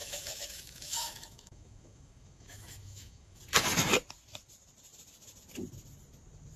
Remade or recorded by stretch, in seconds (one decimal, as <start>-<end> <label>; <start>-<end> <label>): 0.0-3.4 remade; 3.4-6.6 recorded